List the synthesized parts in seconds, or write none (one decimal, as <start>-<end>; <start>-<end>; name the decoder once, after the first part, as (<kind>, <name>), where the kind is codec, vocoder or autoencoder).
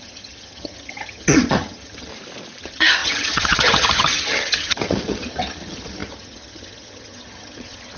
0.0-2.1 (vocoder, HiFi-GAN); 2.6-8.0